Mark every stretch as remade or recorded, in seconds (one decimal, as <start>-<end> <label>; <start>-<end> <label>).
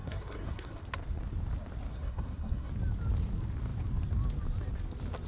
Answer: 0.0-0.8 remade; 0.8-1.9 recorded; 1.9-2.7 remade; 2.7-5.3 recorded